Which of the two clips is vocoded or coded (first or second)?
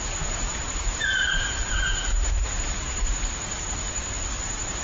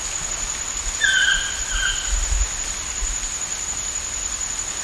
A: first